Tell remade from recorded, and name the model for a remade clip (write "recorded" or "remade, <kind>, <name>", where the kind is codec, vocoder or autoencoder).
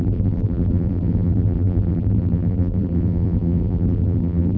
remade, vocoder, BigVGAN v2